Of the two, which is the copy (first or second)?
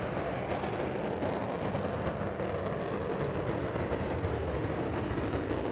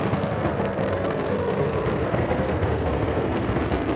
second